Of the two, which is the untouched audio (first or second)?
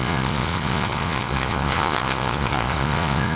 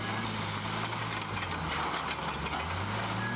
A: second